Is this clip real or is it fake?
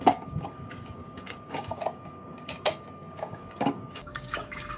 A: fake